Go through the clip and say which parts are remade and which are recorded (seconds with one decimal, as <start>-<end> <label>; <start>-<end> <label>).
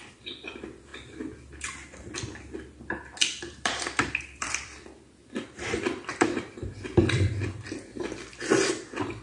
0.0-0.9 remade; 0.9-3.4 recorded; 3.4-7.9 remade; 7.9-8.5 recorded; 8.5-9.2 remade